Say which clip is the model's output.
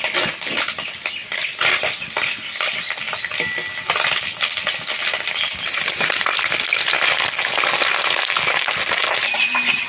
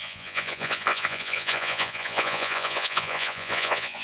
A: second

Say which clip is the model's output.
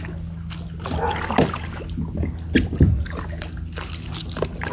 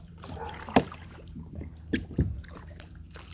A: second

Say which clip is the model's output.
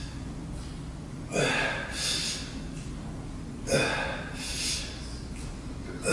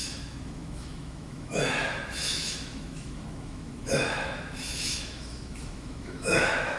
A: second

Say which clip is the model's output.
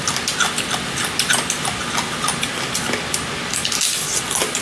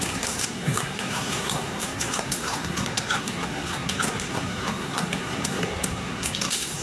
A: second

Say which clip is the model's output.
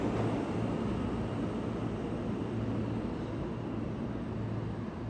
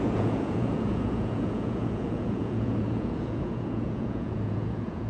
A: second